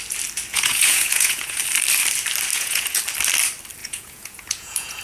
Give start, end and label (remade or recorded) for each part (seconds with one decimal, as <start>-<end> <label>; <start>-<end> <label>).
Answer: 0.0-0.5 recorded; 0.5-1.6 remade; 1.6-2.5 recorded; 2.5-3.0 remade; 3.0-3.8 recorded; 3.8-5.0 remade